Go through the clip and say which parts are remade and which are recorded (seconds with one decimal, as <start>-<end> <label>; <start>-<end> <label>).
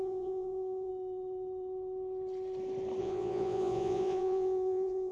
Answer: 0.0-0.9 remade; 0.9-3.0 recorded; 3.0-5.1 remade